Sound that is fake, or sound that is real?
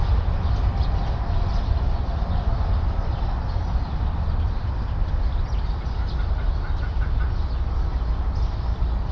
real